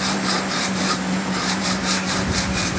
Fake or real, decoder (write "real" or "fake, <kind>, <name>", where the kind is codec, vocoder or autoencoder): fake, vocoder, BigVGAN v2